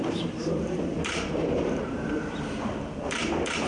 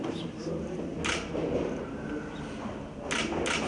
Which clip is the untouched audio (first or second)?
second